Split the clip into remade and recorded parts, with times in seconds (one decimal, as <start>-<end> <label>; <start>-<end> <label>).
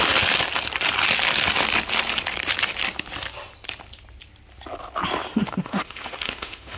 0.0-5.4 recorded; 5.4-6.8 remade